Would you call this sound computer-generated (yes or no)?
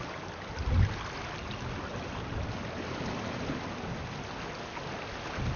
no